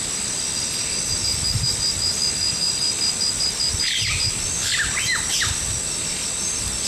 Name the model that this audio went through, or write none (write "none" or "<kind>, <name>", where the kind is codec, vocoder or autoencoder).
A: none